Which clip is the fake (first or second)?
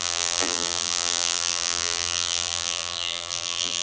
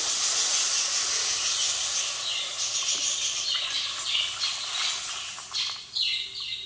first